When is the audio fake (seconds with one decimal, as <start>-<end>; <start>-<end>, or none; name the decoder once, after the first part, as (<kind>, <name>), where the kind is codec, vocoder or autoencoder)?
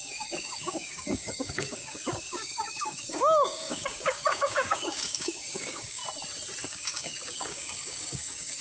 0.0-6.0 (codec, DAC); 6.6-8.6